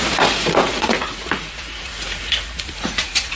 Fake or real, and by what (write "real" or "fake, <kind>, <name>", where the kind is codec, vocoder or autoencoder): fake, vocoder, Vocos